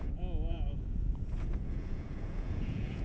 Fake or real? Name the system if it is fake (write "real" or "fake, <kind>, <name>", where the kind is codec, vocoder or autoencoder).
fake, vocoder, Vocos